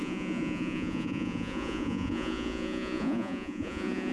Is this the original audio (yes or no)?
no